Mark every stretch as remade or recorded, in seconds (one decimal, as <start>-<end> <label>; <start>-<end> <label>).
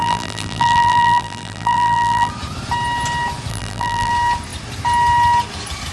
0.0-2.3 remade; 2.3-3.5 recorded; 3.5-4.1 remade; 4.1-5.9 recorded